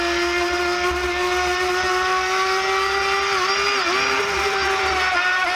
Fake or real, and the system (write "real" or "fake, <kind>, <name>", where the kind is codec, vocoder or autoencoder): real